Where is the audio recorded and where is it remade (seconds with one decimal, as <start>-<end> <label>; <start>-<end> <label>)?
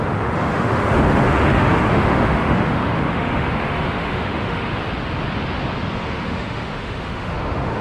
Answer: 0.0-4.7 remade; 4.7-5.9 recorded; 5.9-7.8 remade